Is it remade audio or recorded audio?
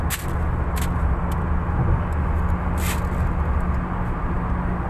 recorded